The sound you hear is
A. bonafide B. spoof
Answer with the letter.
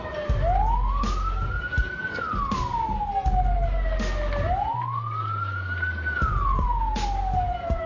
A